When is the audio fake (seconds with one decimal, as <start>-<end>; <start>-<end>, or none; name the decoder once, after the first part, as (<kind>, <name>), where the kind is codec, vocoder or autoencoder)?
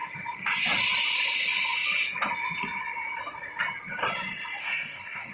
4.6-5.3 (codec, SNAC)